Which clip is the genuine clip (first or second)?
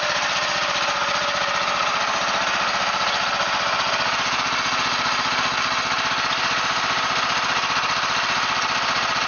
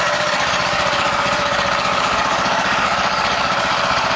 first